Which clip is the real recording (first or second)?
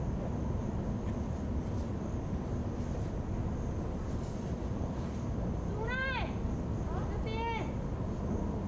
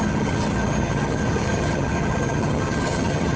first